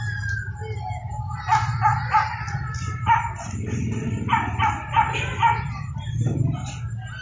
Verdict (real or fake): real